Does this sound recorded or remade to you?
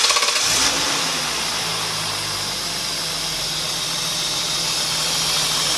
recorded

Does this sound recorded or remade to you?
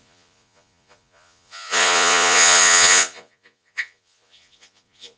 remade